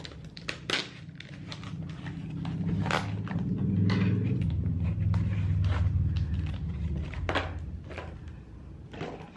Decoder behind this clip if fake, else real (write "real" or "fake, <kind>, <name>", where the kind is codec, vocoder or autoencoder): real